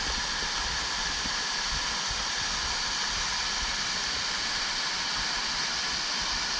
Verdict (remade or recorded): recorded